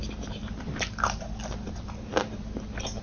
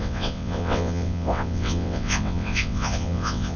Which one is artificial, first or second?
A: second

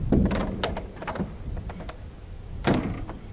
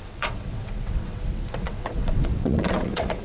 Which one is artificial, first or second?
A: second